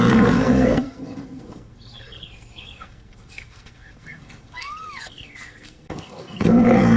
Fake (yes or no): yes